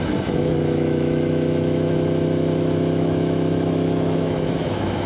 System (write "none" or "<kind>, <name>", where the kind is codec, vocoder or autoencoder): autoencoder, DAC-VAE